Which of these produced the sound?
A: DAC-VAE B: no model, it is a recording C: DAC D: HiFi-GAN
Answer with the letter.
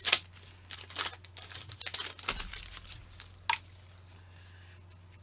B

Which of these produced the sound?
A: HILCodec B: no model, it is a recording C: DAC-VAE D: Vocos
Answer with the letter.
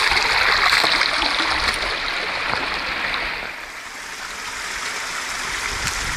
B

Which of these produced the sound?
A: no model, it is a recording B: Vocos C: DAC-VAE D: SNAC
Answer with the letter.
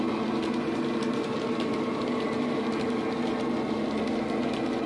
A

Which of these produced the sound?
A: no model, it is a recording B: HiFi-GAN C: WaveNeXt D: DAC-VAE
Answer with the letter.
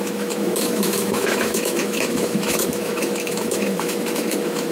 D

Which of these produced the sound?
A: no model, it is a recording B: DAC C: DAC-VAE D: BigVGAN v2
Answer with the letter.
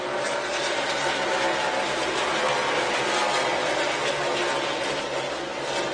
A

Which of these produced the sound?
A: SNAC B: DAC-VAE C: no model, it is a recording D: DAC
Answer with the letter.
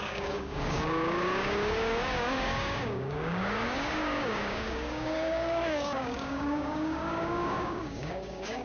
D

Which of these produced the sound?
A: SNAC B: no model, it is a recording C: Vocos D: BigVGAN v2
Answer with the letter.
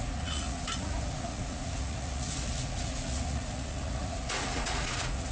C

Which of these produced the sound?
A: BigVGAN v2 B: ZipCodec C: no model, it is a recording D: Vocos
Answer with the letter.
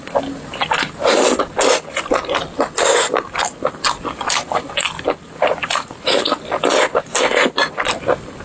C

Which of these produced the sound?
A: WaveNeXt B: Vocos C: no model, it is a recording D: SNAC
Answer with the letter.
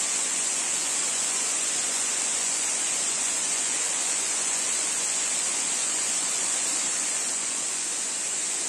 B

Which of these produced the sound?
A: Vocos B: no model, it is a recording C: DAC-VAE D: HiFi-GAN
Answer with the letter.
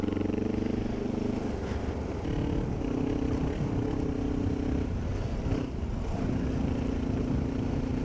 B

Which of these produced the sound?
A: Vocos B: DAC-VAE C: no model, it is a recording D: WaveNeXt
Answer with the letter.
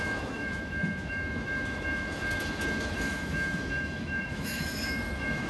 B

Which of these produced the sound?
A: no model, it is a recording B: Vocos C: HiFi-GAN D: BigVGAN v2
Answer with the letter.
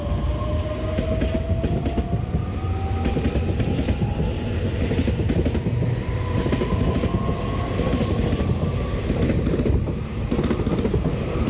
A